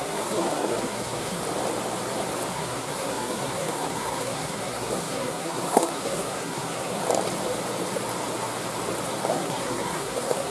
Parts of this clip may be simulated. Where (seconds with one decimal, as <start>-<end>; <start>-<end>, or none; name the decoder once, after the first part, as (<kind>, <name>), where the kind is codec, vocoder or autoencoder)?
0.0-1.4 (codec, SNAC); 2.5-7.0; 9.3-10.5